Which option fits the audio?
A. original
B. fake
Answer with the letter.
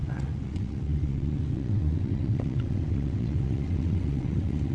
B